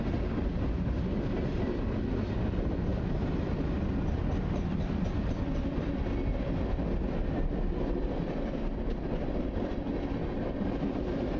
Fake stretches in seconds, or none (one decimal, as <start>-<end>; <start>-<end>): none